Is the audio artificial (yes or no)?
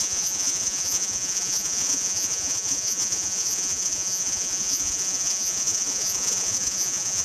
yes